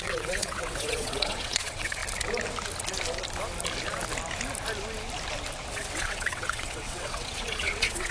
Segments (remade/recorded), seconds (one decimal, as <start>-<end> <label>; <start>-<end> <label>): 0.0-2.0 remade; 2.0-5.7 recorded; 5.7-8.1 remade